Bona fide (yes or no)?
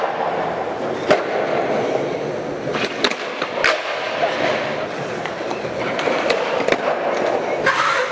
yes